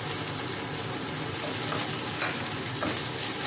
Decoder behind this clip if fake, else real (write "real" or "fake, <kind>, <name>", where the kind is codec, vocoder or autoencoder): real